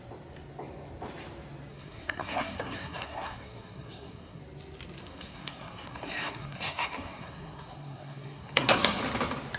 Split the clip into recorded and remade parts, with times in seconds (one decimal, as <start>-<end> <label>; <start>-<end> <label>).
0.0-1.7 recorded; 1.7-4.4 remade; 4.4-5.0 recorded; 5.0-9.0 remade; 9.0-9.6 recorded